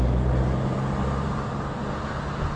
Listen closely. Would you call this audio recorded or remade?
recorded